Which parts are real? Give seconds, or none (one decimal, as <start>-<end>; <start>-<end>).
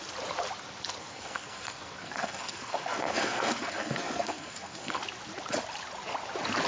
0.0-1.0; 5.0-6.7